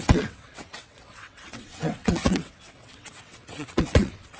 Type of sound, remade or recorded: remade